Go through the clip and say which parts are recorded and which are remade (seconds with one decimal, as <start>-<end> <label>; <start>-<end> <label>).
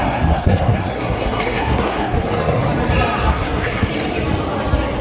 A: 0.0-2.6 remade; 2.6-3.3 recorded; 3.3-3.9 remade; 3.9-5.0 recorded